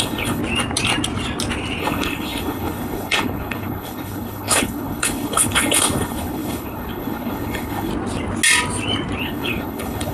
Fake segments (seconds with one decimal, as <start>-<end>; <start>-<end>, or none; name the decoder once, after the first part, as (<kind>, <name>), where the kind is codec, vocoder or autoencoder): 0.0-0.4 (codec, HILCodec); 1.8-7.9; 9.2-10.1